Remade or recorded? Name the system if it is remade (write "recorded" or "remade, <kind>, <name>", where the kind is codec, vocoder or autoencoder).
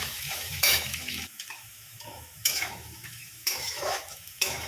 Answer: remade, autoencoder, DAC-VAE